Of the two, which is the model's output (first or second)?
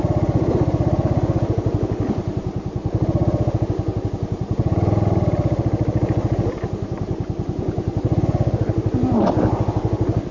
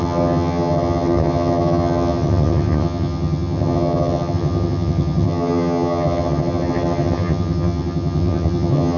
second